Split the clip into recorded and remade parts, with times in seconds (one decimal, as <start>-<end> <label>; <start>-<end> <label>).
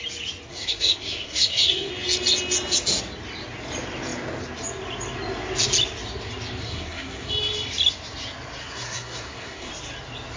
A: 0.0-0.5 recorded; 0.5-1.9 remade; 1.9-6.6 recorded; 6.6-7.3 remade; 7.3-8.6 recorded; 8.6-9.7 remade; 9.7-10.4 recorded